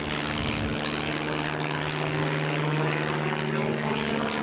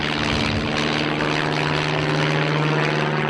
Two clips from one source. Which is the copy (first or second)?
first